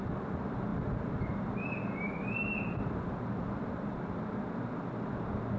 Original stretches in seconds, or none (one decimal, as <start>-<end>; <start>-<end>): 0.0-5.6